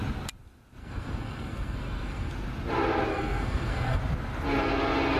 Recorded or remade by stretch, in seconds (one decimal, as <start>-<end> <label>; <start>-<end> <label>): 0.0-0.8 recorded; 0.8-2.3 remade; 2.3-3.1 recorded; 3.1-4.0 remade; 4.0-5.2 recorded